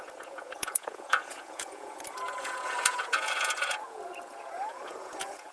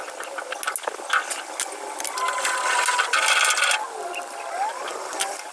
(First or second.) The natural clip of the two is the second